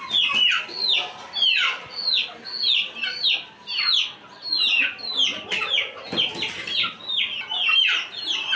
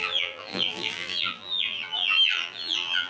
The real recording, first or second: first